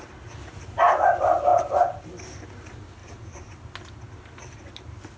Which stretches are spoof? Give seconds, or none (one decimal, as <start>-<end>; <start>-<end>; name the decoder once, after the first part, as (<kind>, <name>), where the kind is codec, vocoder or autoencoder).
3.0-3.7 (vocoder, BigVGAN v2)